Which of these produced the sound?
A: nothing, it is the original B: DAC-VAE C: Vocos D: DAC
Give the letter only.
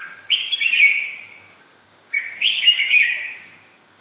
D